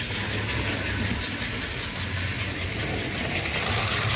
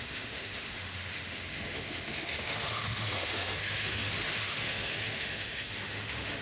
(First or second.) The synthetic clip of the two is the second